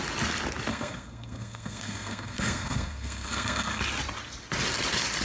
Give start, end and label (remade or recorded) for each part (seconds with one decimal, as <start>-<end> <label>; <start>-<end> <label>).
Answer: 0.0-0.7 recorded; 0.7-3.8 remade; 3.8-5.2 recorded